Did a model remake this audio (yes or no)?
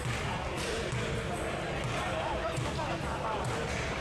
no